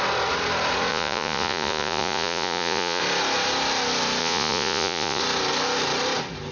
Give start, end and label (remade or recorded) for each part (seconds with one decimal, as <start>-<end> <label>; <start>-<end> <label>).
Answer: 0.0-0.9 recorded; 0.9-3.0 remade; 3.0-4.2 recorded; 4.2-5.2 remade; 5.2-6.5 recorded